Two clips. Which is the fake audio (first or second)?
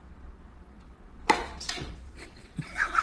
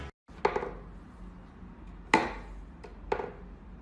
first